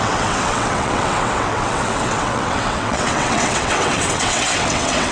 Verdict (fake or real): fake